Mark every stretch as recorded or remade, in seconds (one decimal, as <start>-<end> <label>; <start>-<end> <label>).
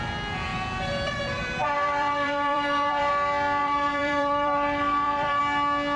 0.0-0.5 recorded; 0.5-3.1 remade; 3.1-3.6 recorded; 3.6-5.4 remade; 5.4-6.0 recorded